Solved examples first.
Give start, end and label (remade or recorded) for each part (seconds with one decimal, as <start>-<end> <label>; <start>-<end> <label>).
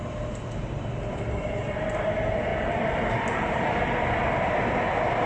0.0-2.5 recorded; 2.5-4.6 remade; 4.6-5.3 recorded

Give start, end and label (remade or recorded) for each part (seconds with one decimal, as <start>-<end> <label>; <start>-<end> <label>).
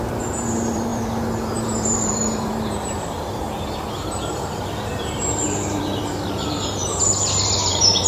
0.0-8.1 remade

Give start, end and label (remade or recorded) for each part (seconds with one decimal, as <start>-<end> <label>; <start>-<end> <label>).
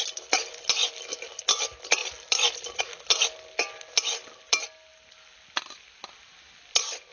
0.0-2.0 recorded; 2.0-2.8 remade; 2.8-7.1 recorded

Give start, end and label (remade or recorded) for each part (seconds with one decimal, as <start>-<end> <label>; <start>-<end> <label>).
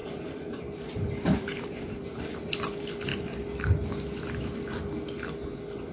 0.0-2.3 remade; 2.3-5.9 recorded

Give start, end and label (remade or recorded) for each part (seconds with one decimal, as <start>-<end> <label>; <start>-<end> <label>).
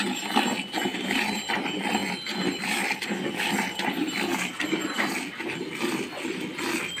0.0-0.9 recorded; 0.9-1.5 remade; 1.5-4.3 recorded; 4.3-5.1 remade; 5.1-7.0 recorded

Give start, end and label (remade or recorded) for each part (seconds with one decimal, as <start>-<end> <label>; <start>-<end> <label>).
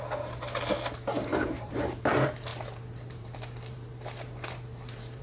0.0-1.3 recorded; 1.3-1.8 remade; 1.8-2.5 recorded; 2.5-5.2 remade